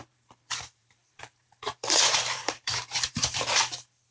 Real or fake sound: fake